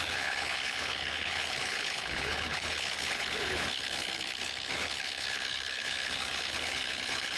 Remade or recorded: remade